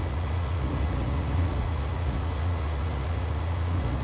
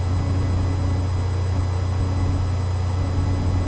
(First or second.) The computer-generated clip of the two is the first